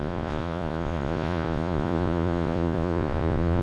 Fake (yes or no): yes